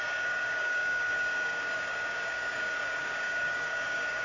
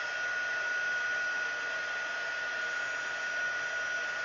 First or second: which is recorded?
second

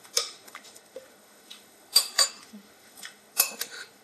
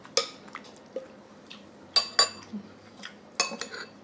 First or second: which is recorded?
second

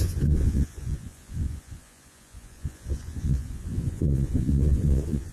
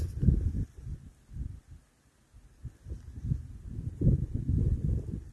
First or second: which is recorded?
second